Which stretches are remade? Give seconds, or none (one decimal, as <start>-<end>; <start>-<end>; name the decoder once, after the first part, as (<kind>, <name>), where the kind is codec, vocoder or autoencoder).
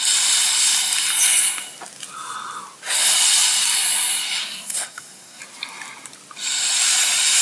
4.4-5.4 (codec, SNAC)